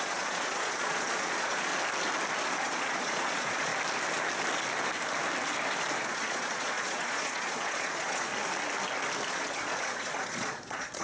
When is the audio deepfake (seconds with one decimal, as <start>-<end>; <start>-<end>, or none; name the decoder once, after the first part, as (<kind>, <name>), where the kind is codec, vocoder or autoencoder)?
0.0-1.7 (vocoder, Vocos); 2.6-3.7; 6.0-8.3; 9.3-11.0